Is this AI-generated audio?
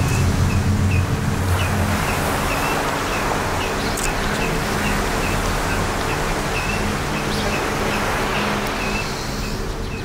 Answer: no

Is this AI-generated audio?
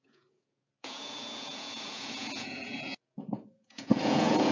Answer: yes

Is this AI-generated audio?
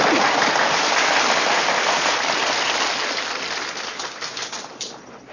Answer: no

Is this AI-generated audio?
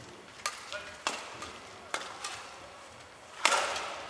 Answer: no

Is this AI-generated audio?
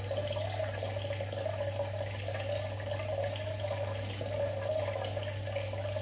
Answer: no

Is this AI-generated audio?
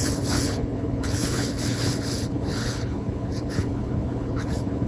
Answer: yes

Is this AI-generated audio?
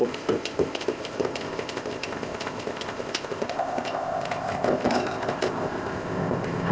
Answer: yes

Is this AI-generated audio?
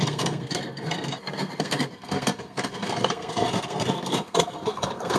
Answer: yes